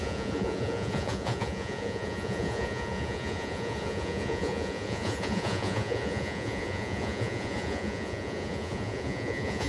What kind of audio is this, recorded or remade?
remade